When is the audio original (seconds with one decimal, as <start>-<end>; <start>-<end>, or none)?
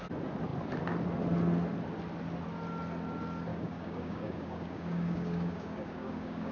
0.0-3.5